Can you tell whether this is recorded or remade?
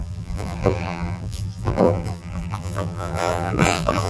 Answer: remade